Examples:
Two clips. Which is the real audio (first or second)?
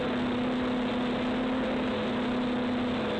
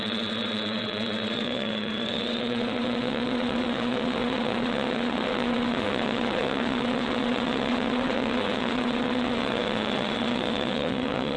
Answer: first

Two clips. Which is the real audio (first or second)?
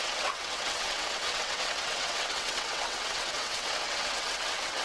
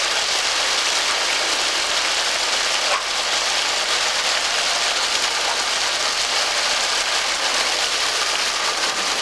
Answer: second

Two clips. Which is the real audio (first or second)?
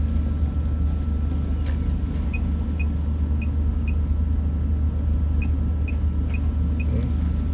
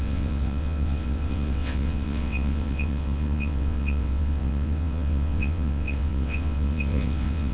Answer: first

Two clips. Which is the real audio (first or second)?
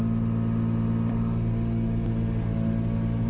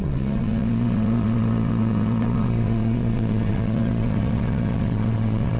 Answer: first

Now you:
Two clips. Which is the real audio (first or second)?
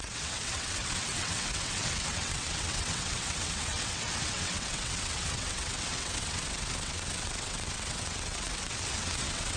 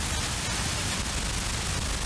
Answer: second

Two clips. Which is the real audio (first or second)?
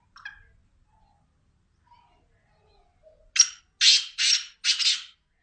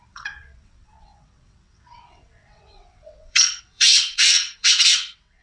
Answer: first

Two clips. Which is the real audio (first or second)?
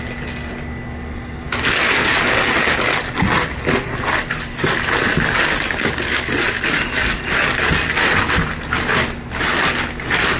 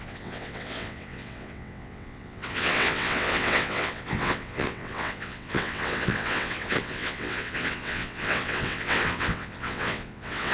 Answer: first